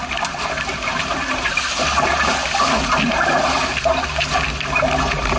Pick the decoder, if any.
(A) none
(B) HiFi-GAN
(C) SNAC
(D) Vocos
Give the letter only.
A